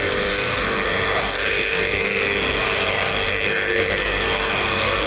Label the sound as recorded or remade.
remade